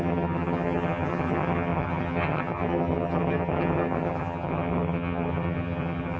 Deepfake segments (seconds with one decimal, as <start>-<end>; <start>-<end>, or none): 0.0-6.2